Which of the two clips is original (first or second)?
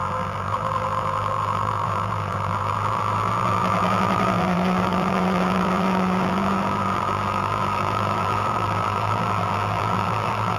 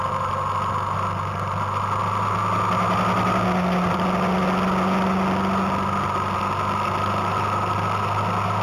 second